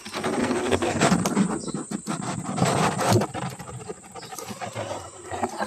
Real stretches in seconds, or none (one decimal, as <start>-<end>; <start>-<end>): 0.0-0.4; 1.0-5.7